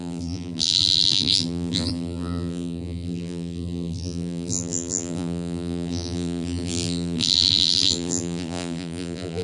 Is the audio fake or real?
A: fake